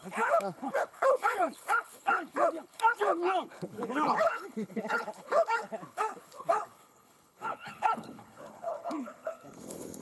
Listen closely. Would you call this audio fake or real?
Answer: fake